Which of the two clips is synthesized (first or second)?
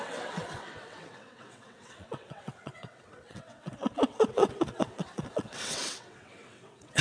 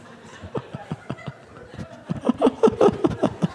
first